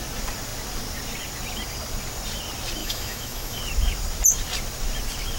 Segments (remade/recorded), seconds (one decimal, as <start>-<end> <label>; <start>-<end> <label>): 0.0-2.8 recorded; 2.8-3.6 remade; 3.6-5.4 recorded